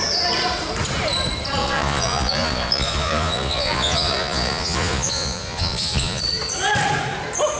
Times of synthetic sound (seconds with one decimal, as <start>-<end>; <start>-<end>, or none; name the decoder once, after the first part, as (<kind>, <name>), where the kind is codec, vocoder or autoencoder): 1.6-6.2 (vocoder, Vocos)